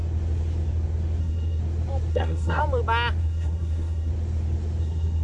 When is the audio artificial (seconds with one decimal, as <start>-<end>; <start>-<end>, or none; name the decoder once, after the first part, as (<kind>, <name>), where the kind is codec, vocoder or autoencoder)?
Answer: 1.2-1.6 (codec, SNAC); 2.1-2.6; 3.2-4.1; 4.8-5.2